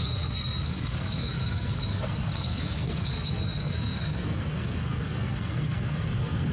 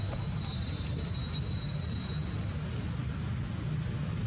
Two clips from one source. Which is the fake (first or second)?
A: first